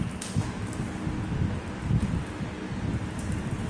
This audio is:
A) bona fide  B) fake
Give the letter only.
A